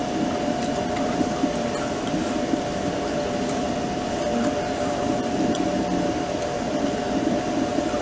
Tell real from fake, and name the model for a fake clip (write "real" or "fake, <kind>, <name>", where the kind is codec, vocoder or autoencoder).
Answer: real